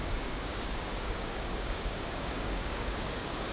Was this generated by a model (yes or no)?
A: yes